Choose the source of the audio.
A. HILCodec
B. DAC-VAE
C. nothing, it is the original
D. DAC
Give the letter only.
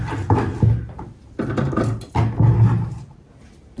C